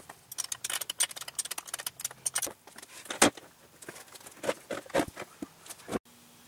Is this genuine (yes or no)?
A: yes